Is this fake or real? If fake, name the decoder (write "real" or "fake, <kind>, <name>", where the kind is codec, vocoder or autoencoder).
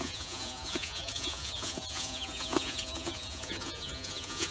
fake, vocoder, Vocos